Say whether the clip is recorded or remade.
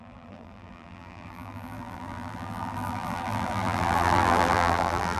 remade